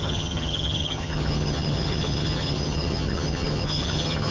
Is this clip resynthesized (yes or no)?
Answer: yes